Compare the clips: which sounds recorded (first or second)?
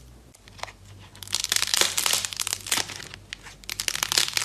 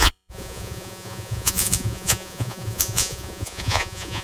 first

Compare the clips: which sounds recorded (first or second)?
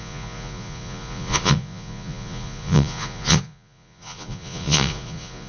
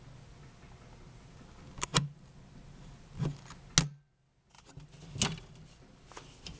second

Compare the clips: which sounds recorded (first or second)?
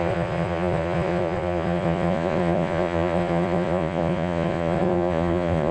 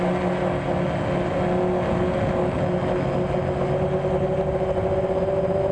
second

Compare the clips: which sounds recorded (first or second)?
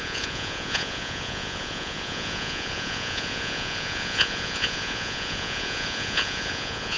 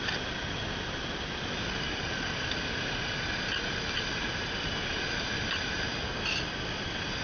second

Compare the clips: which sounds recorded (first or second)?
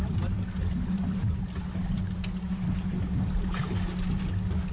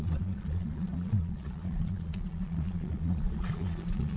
first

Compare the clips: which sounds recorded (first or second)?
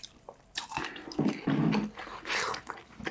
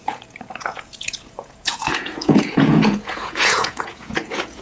first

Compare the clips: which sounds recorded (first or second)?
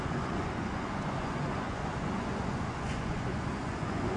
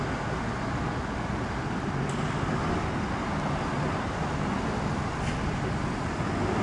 second